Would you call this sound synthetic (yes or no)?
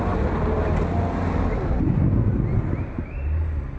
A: no